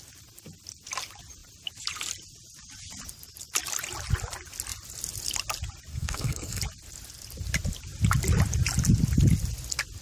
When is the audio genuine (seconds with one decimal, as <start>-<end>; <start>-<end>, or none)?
0.0-5.9; 6.6-10.0

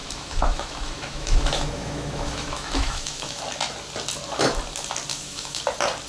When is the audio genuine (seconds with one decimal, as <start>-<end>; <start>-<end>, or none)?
3.4-5.1; 5.6-6.1

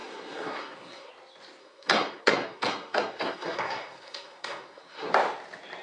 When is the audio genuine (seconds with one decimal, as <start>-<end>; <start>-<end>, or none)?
1.1-1.6; 5.1-5.8

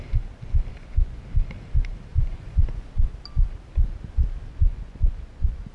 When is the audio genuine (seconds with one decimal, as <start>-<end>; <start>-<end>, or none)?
0.0-0.7; 1.2-2.1; 3.1-4.5

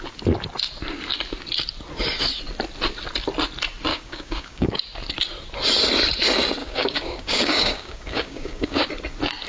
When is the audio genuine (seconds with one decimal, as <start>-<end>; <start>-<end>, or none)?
0.0-3.9; 4.8-6.6; 8.9-9.5

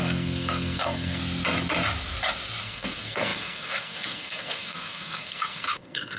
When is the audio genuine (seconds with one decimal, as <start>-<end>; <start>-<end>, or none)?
1.2-2.6

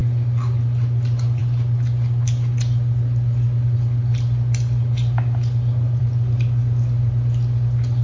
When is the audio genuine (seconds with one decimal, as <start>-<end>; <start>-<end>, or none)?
0.0-8.0